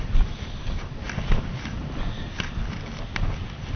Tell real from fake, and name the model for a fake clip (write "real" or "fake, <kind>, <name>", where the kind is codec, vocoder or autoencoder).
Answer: real